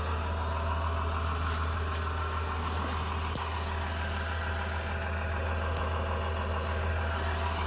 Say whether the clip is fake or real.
real